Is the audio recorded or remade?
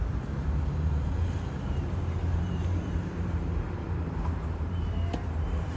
remade